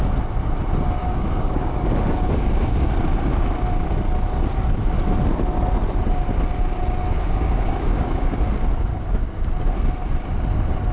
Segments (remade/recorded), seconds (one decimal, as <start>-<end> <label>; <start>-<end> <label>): 0.0-1.0 recorded; 1.0-2.9 remade; 2.9-7.1 recorded; 7.1-8.3 remade; 8.3-8.9 recorded; 8.9-9.4 remade; 9.4-10.9 recorded